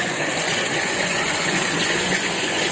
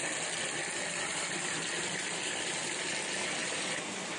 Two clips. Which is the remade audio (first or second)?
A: first